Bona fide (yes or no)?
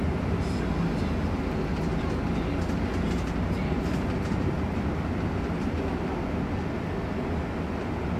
yes